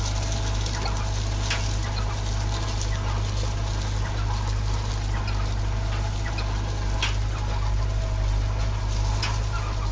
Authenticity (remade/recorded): recorded